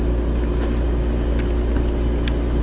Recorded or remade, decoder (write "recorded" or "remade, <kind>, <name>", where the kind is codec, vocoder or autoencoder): recorded